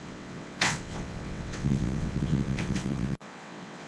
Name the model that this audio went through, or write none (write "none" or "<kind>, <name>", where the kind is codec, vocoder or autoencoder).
vocoder, WaveNeXt